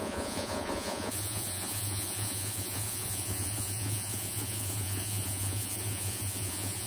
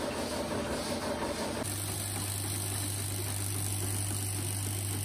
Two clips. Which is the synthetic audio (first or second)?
first